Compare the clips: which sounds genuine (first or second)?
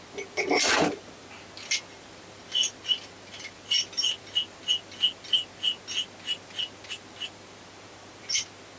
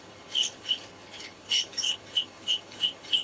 first